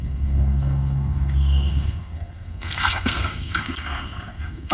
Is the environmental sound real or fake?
fake